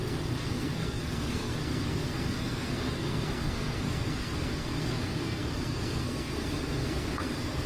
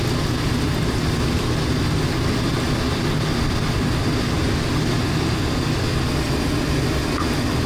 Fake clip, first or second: first